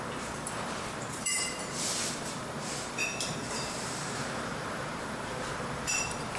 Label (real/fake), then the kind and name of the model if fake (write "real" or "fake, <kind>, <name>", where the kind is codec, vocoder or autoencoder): fake, vocoder, BigVGAN v2